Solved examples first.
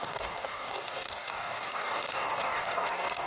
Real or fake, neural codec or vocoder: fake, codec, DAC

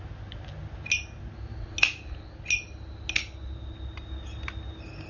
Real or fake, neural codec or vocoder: real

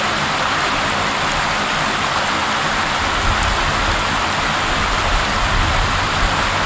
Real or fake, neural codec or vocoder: real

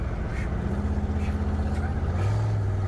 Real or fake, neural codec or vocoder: real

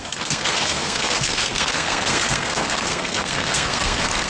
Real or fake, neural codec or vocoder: fake, codec, SNAC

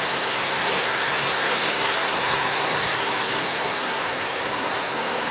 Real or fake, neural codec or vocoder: fake, codec, SNAC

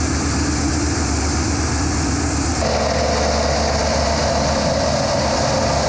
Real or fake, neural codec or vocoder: real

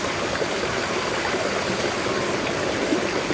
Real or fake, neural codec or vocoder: real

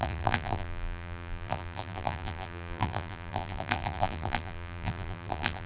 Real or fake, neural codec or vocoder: fake, vocoder, BigVGAN v2